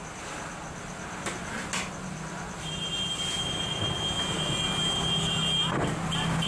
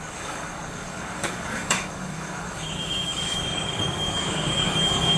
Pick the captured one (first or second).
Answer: first